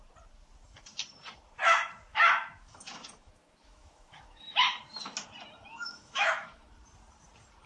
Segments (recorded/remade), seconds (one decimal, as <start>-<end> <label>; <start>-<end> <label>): 0.0-2.1 recorded; 2.1-4.7 remade; 4.7-5.7 recorded; 5.7-6.7 remade; 6.7-7.7 recorded